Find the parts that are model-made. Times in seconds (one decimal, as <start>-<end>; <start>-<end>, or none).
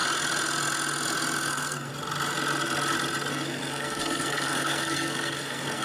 1.5-1.9; 3.3-5.8